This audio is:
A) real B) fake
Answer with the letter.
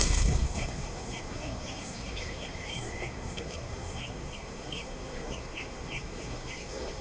B